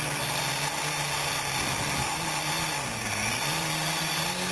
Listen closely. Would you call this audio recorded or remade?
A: recorded